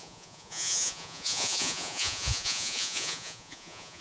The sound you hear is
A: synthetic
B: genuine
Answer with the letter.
A